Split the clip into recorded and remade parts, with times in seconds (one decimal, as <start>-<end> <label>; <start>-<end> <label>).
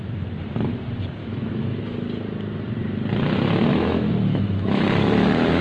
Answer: 0.0-1.2 recorded; 1.2-1.8 remade; 1.8-3.7 recorded; 3.7-5.6 remade